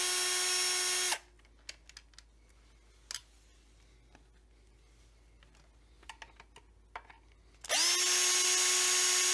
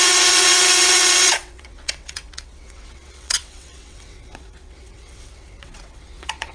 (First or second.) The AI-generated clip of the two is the second